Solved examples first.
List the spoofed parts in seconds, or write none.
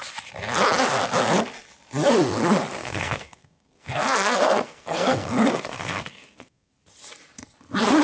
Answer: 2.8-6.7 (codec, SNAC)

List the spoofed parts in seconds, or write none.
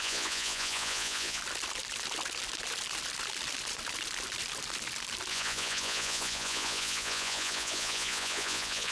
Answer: 0.0-1.4 (vocoder, Vocos); 5.3-8.9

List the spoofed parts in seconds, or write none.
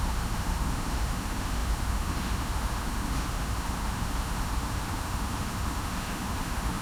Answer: 0.0-6.8 (autoencoder, DAC-VAE)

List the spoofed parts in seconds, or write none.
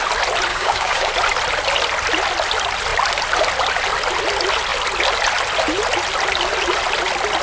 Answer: 0.5-1.1 (codec, DAC)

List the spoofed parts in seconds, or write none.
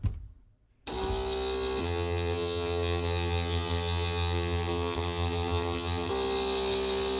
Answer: 1.8-6.1 (vocoder, HiFi-GAN)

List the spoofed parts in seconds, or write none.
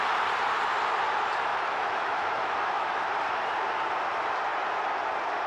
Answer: 1.5-3.1 (autoencoder, DAC-VAE)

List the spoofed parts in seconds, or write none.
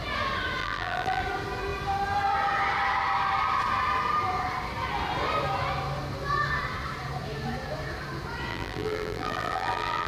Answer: 0.6-1.2 (vocoder, BigVGAN v2); 8.5-10.1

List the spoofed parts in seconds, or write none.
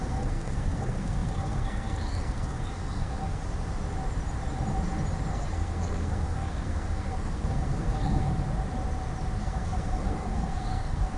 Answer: 0.0-3.4 (codec, SNAC); 5.3-8.3; 9.4-11.2